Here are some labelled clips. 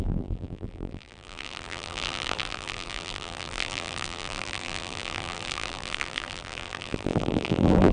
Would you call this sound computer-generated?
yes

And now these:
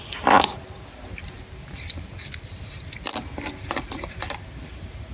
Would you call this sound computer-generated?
no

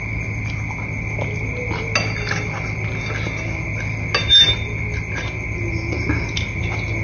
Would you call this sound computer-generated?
no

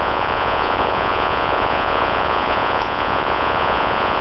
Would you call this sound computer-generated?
yes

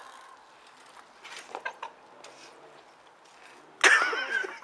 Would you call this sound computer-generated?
no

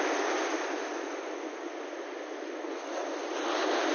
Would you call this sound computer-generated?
no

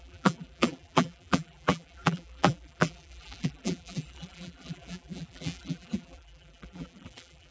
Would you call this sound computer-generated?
yes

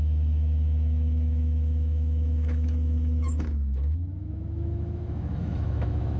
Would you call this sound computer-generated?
yes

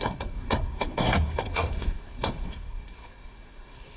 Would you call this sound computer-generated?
yes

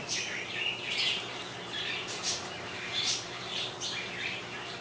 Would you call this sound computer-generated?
yes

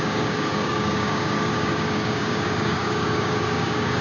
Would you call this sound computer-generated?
yes